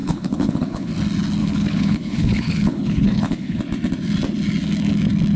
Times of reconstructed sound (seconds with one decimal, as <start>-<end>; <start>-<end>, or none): 0.0-0.9; 1.4-3.6